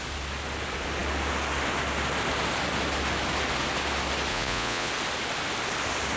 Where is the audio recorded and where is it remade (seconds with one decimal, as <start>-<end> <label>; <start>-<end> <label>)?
0.0-4.3 recorded; 4.3-4.9 remade; 4.9-6.2 recorded